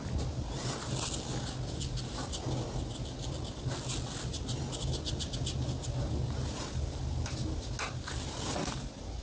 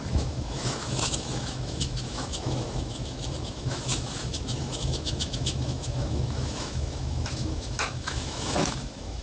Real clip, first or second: first